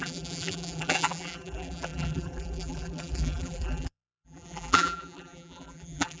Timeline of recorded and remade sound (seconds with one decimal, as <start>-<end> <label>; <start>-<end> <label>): 0.0-6.2 remade